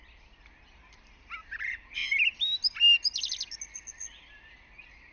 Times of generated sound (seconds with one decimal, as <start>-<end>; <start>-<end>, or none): none